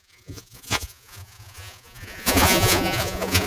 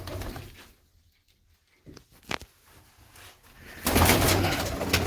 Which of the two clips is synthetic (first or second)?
first